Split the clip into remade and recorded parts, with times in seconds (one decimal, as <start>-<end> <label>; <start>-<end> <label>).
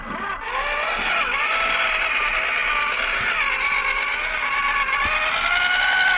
0.0-6.2 recorded